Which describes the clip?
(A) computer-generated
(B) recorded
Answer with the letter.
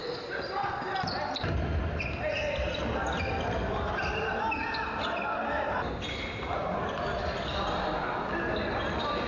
B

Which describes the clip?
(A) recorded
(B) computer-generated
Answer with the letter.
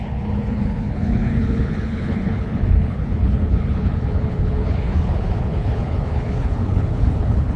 B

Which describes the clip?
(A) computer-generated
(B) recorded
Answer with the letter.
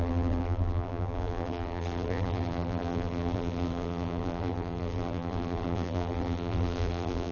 A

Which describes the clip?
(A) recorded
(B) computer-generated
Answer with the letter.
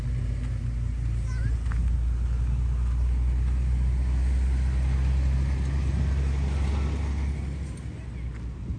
A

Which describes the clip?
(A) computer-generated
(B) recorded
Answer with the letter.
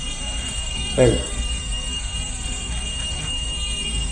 A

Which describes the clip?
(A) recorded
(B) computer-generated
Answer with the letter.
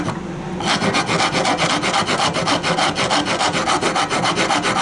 A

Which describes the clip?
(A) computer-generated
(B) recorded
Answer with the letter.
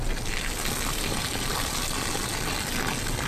B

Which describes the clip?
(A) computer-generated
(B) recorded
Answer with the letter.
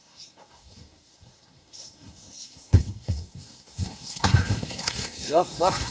A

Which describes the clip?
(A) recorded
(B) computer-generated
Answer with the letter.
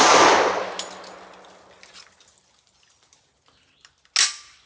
A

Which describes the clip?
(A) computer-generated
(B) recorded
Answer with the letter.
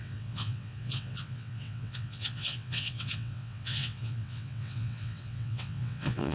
A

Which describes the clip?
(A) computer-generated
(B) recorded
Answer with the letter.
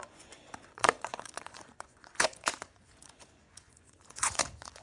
A